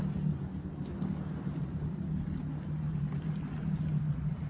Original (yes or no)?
yes